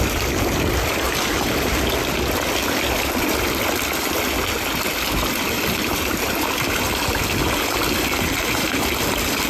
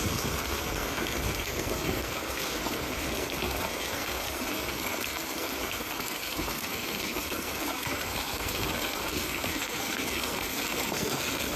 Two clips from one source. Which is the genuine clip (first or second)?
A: first